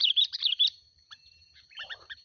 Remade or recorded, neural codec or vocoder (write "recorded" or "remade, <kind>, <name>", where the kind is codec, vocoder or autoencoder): remade, vocoder, BigVGAN v2